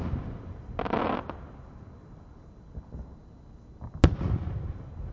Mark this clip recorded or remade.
recorded